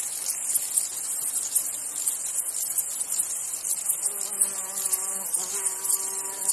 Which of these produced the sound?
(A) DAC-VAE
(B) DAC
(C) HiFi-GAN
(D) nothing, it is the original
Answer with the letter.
D